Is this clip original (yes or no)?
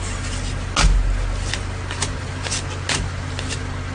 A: yes